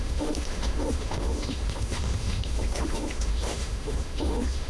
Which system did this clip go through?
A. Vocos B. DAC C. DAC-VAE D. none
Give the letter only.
C